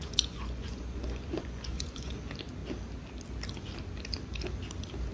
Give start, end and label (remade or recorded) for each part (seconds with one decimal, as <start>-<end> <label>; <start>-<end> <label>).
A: 0.0-2.2 remade; 2.2-5.1 recorded